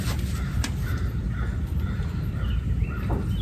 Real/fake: real